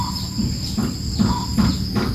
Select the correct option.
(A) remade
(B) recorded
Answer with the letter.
B